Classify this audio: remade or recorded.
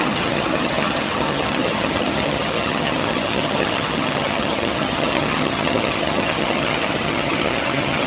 remade